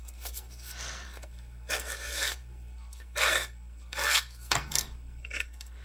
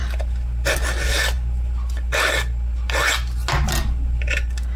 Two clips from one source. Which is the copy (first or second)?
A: first